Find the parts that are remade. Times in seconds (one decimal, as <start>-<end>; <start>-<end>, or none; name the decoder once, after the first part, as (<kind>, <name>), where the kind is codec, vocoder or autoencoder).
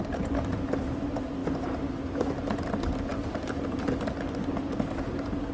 none